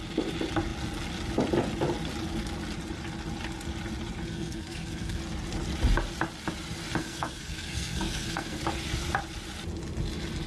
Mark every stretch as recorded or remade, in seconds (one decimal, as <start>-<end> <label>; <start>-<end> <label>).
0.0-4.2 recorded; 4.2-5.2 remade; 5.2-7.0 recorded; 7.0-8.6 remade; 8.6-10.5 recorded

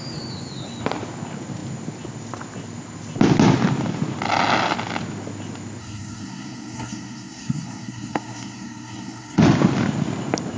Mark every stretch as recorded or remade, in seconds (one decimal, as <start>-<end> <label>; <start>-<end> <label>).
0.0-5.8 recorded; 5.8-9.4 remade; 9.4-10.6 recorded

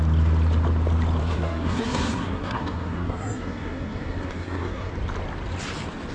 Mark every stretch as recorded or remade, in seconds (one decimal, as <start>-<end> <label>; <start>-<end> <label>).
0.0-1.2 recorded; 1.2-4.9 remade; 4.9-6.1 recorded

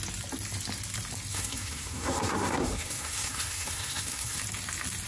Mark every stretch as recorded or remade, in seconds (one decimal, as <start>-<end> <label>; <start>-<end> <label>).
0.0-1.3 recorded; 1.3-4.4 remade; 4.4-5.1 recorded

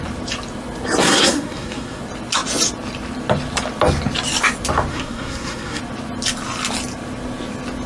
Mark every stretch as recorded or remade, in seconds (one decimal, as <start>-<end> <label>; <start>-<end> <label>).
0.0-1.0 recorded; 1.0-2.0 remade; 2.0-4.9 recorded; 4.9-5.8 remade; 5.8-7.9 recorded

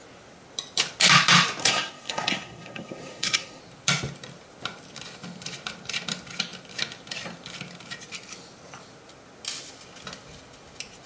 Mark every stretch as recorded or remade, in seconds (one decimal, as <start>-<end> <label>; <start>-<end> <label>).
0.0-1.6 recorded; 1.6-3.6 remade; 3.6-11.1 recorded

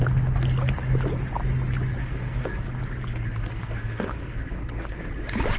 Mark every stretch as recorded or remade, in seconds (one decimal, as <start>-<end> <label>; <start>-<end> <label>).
0.0-2.0 recorded; 2.0-2.7 remade; 2.7-3.4 recorded; 3.4-5.0 remade; 5.0-5.6 recorded

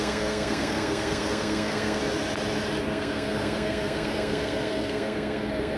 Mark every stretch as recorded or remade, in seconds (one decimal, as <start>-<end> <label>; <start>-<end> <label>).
0.0-2.0 remade; 2.0-2.8 recorded; 2.8-5.8 remade